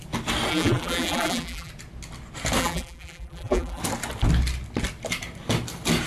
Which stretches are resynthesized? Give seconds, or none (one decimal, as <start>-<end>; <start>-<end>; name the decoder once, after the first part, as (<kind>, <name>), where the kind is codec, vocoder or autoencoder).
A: 0.5-1.7 (vocoder, BigVGAN v2); 2.6-3.8